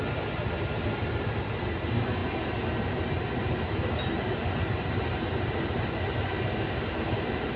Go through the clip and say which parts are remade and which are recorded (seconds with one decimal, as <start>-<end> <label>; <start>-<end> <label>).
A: 0.0-7.6 recorded